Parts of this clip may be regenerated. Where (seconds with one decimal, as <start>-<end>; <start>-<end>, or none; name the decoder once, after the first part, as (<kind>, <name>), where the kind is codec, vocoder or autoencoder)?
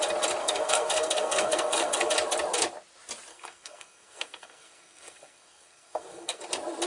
0.4-2.1 (codec, SNAC); 3.3-6.4